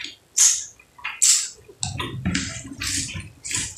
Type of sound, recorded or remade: recorded